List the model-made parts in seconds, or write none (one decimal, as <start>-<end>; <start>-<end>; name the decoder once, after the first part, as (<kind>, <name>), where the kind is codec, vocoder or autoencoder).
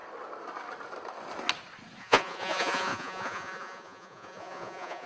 2.0-5.1 (vocoder, Vocos)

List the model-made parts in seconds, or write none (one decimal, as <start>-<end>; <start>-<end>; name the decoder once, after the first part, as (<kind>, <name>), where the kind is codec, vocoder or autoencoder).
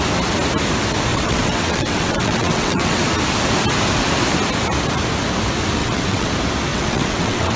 1.1-3.0 (vocoder, WaveNeXt); 5.8-6.3; 6.7-7.6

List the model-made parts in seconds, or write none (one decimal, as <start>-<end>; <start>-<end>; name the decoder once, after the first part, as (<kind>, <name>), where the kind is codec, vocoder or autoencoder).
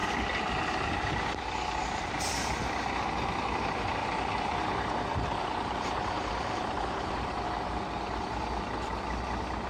1.8-2.5 (vocoder, BigVGAN v2); 4.0-7.4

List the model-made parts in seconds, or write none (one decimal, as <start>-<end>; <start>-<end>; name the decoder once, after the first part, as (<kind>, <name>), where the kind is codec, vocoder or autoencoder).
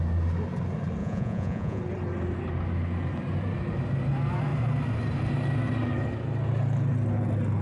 1.0-1.8 (vocoder, Vocos)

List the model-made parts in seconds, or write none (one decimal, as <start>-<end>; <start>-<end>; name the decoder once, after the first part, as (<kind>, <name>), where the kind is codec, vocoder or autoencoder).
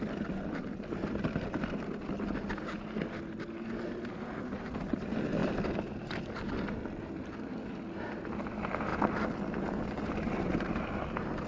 none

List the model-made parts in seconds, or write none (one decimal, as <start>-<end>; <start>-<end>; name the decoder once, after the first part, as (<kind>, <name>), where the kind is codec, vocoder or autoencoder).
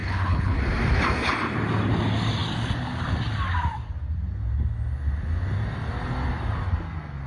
0.0-0.6 (codec, HILCodec)